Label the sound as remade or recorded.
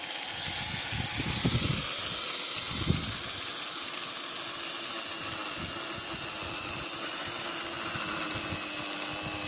recorded